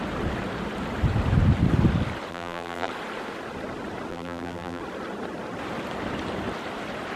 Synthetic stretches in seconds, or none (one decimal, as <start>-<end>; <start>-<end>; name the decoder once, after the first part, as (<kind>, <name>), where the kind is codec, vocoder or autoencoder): 2.3-2.9 (vocoder, BigVGAN v2); 4.1-4.8